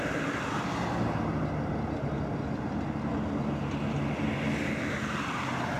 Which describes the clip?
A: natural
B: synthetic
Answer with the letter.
A